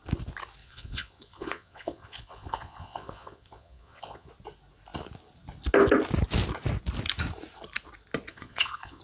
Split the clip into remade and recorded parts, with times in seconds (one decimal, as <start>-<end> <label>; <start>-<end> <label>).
0.0-0.6 recorded; 0.6-4.3 remade; 4.3-8.3 recorded; 8.3-9.0 remade